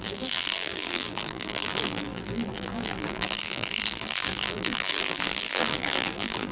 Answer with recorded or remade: remade